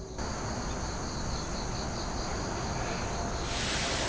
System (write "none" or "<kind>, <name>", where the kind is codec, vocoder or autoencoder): none